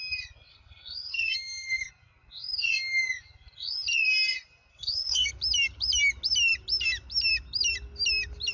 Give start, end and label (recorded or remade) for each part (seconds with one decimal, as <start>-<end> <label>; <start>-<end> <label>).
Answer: 0.0-0.5 recorded; 0.5-1.9 remade; 1.9-4.7 recorded; 4.7-5.3 remade; 5.3-8.5 recorded